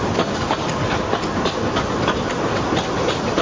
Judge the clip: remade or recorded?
recorded